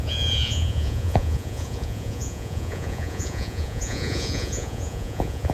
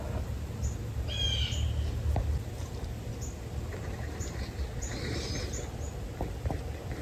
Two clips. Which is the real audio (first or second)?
second